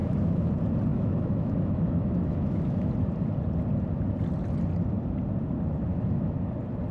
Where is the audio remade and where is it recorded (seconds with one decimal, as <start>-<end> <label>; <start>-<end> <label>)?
0.0-0.5 remade; 0.5-0.9 recorded; 0.9-2.9 remade; 2.9-5.9 recorded; 5.9-6.5 remade; 6.5-6.9 recorded